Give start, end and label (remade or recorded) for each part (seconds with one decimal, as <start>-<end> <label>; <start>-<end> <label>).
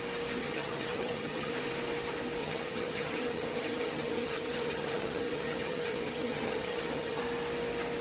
0.0-0.4 recorded; 0.4-1.5 remade; 1.5-2.4 recorded; 2.4-7.2 remade; 7.2-8.0 recorded